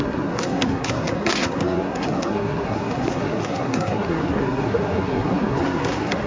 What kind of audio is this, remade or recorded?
remade